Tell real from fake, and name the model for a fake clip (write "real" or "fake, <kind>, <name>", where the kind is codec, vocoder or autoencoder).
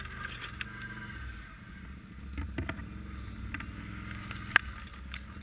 real